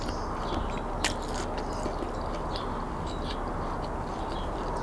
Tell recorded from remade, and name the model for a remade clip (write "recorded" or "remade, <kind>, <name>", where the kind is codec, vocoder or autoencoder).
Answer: recorded